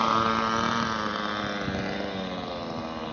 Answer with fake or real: real